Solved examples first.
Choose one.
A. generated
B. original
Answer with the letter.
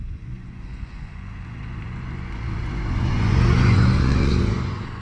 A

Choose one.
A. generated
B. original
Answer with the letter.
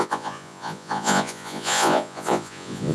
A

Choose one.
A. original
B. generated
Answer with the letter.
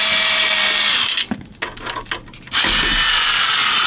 A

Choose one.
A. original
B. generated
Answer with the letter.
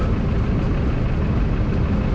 A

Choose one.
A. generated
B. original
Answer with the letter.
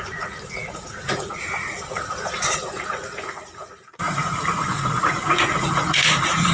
A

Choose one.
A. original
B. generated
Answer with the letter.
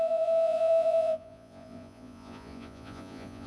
B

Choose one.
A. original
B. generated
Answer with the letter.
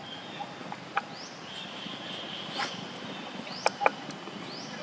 A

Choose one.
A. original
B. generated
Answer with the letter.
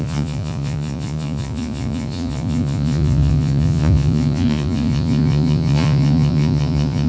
B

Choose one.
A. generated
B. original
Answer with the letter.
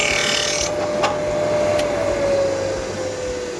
B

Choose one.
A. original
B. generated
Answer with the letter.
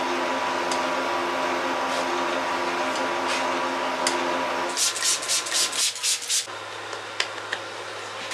A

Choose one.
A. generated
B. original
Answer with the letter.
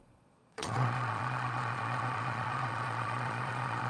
A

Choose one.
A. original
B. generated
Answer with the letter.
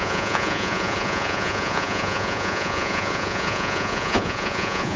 B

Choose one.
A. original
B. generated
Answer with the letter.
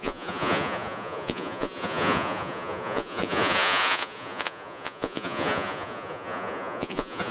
B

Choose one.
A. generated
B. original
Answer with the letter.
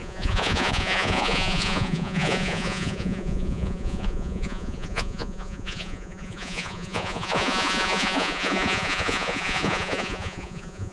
A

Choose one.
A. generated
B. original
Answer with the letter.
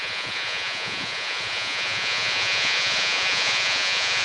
A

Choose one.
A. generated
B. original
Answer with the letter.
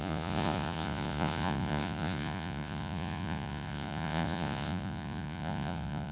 A